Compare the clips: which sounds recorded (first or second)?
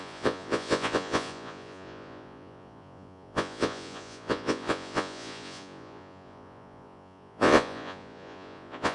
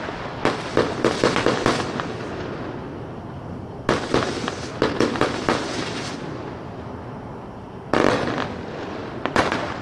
second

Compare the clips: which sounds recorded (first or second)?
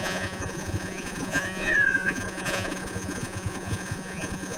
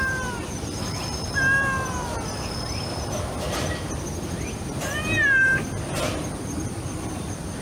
second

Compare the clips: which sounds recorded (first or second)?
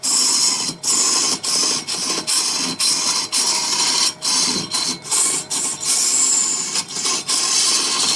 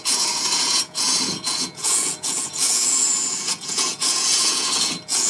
first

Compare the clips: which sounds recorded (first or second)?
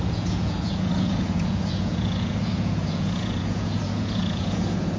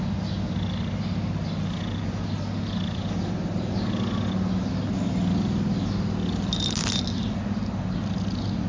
second